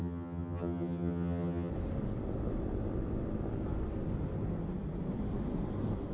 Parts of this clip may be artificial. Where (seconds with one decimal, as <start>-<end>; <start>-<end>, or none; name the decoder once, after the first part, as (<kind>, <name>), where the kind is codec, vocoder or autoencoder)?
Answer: 0.0-1.7 (vocoder, HiFi-GAN)